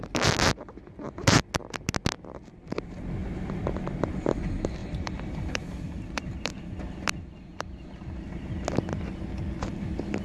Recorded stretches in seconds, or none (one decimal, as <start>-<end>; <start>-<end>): 0.0-3.2; 3.8-4.8; 6.6-7.5; 8.4-10.2